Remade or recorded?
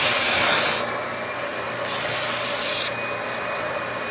recorded